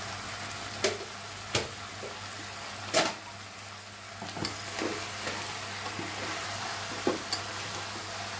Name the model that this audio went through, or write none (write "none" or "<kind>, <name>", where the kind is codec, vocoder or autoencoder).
none